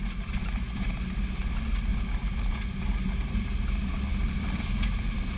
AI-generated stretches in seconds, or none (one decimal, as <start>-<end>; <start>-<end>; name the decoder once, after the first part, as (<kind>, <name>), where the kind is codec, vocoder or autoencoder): none